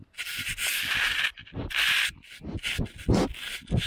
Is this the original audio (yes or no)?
yes